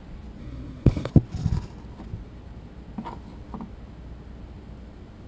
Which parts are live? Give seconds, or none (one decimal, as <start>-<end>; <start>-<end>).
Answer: 0.0-0.4; 1.1-5.3